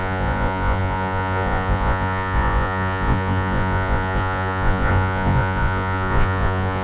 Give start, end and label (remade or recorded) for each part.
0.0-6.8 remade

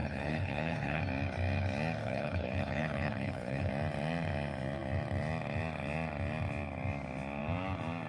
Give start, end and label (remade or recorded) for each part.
0.0-1.0 remade; 1.0-2.0 recorded; 2.0-3.7 remade; 3.7-8.1 recorded

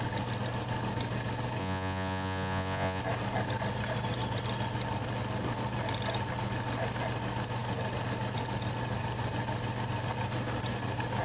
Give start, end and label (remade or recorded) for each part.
0.0-1.6 recorded; 1.6-3.0 remade; 3.0-11.2 recorded